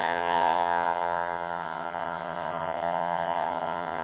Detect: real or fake fake